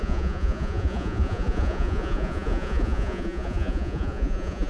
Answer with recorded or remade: remade